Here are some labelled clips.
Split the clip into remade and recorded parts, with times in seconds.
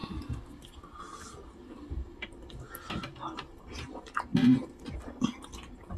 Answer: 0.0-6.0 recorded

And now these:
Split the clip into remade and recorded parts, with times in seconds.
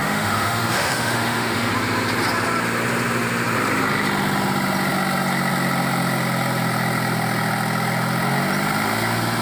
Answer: 0.0-1.7 remade; 1.7-9.4 recorded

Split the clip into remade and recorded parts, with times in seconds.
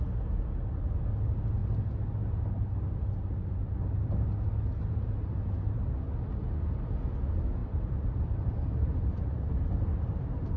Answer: 0.0-7.6 recorded; 7.6-9.5 remade; 9.5-10.6 recorded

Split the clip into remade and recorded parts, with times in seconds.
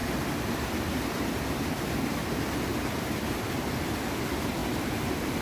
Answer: 0.0-4.6 recorded; 4.6-5.4 remade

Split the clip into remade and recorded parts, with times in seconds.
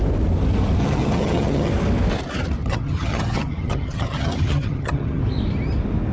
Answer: 0.0-0.8 recorded; 0.8-1.7 remade; 1.7-2.6 recorded; 2.6-5.2 remade; 5.2-6.1 recorded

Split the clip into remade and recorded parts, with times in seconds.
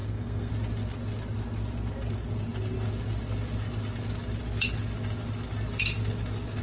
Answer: 0.0-0.5 remade; 0.5-6.6 recorded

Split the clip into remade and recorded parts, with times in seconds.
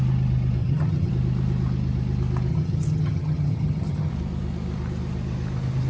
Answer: 0.0-0.6 recorded; 0.6-1.1 remade; 1.1-2.5 recorded; 2.5-4.1 remade; 4.1-5.9 recorded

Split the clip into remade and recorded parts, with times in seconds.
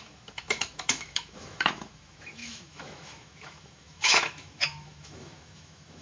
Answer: 0.0-6.0 remade